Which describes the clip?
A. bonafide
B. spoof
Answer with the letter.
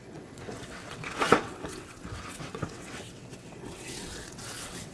B